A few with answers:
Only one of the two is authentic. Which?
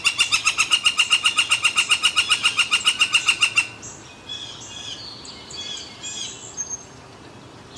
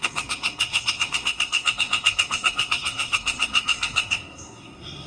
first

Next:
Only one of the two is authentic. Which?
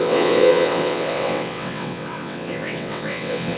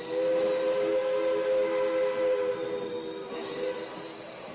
second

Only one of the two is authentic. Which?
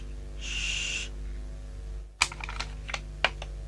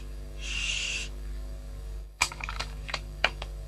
first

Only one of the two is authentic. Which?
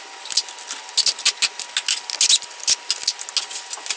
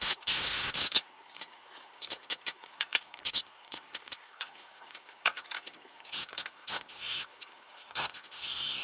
first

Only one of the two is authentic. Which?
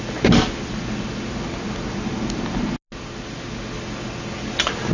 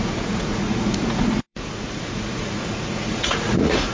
first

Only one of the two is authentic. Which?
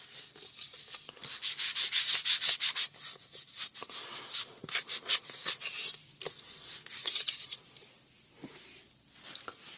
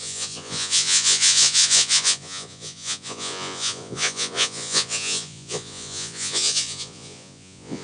first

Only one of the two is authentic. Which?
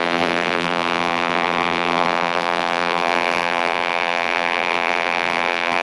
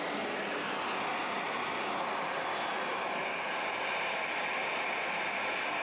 second